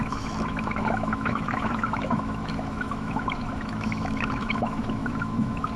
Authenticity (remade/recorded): remade